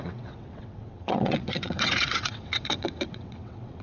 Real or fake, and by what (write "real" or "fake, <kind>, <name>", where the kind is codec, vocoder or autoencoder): fake, vocoder, WaveNeXt